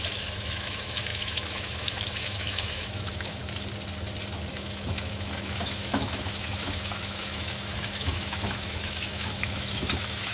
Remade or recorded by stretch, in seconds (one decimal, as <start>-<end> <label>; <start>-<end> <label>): 0.0-3.4 remade; 3.4-4.5 recorded; 4.5-10.3 remade